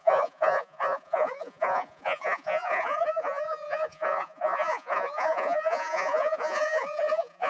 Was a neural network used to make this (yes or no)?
yes